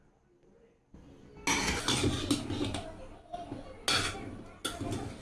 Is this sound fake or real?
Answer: real